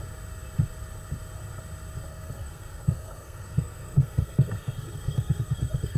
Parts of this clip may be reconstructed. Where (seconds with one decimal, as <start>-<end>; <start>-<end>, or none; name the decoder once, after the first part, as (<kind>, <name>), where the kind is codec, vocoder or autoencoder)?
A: 2.1-6.0 (codec, SNAC)